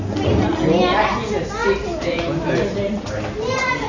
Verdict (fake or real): real